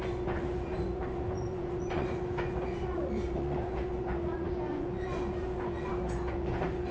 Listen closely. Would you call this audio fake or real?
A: fake